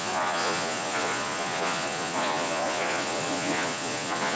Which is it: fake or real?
fake